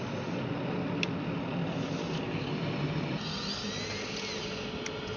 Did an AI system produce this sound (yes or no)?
no